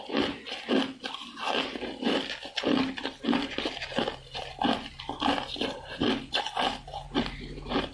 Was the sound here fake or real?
real